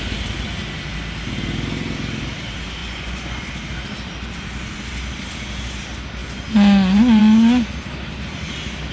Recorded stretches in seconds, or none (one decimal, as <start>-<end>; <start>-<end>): 0.0-2.8; 3.4-8.9